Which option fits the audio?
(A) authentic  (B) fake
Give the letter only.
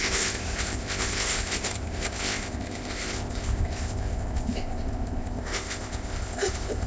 B